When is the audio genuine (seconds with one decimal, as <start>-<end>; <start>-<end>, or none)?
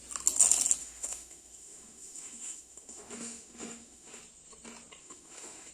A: 0.0-0.8; 4.2-5.0